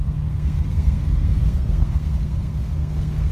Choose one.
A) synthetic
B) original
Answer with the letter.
A